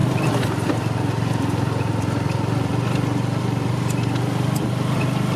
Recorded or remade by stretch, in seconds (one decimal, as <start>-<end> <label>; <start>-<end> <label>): 0.0-0.7 remade; 0.7-5.4 recorded